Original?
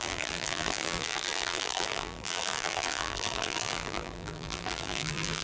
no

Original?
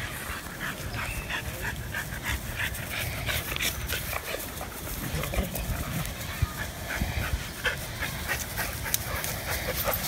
yes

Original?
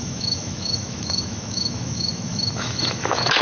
no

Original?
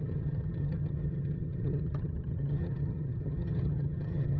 no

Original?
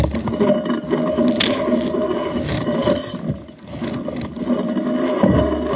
yes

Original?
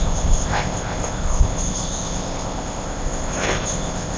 no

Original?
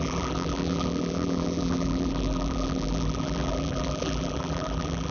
no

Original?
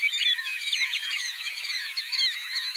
no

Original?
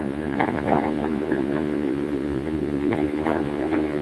no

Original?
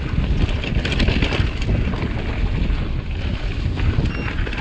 yes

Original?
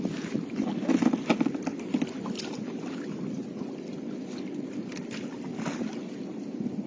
yes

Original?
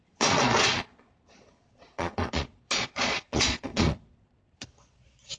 no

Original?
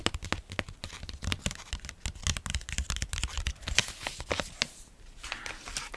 yes